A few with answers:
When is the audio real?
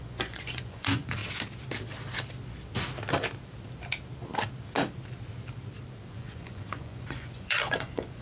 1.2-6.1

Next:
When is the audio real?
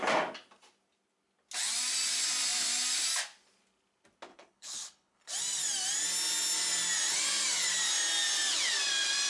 0.0-4.3; 5.3-9.3